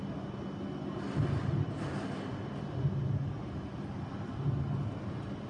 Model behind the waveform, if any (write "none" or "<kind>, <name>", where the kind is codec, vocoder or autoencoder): none